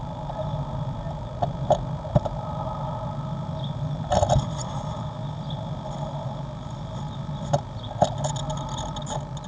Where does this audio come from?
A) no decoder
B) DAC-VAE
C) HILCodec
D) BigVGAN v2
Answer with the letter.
A